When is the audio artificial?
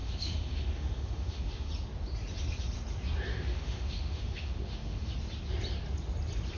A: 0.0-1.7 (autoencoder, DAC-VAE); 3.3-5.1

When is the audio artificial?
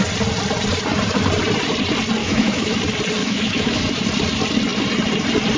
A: 2.2-2.8 (autoencoder, DAC-VAE); 3.2-3.8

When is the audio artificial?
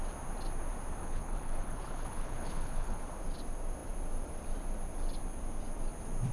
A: 1.0-3.0 (codec, HILCodec)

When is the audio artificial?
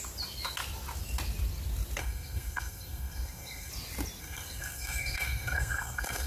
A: 2.0-3.7 (codec, SNAC); 4.2-6.3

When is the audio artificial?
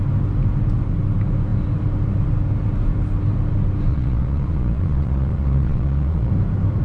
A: 3.9-6.3 (vocoder, Vocos)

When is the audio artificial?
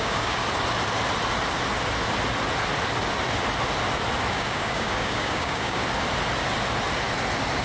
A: 0.0-0.4 (codec, DAC); 4.3-5.8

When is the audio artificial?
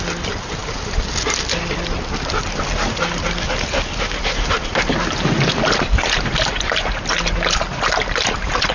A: none